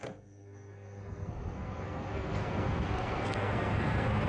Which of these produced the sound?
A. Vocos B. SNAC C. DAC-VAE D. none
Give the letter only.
B